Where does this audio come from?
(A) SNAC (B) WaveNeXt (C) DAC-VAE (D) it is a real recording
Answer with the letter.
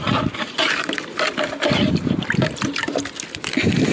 D